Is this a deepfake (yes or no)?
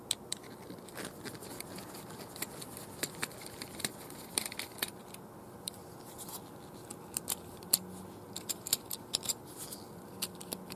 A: no